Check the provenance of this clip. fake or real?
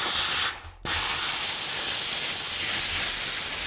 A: real